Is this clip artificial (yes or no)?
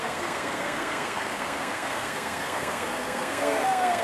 yes